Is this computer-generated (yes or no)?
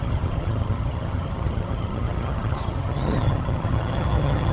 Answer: yes